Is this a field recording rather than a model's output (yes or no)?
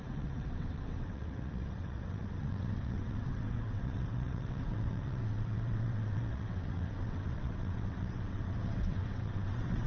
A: no